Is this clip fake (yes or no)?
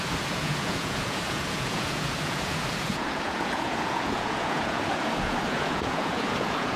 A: yes